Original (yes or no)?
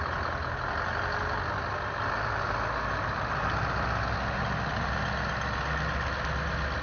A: yes